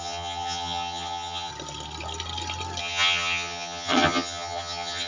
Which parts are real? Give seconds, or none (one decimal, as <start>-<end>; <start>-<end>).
1.5-2.8